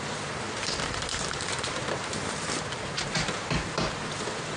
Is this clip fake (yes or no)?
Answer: yes